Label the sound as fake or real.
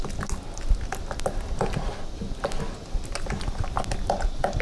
real